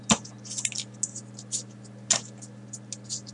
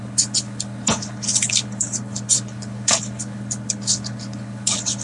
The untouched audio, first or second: first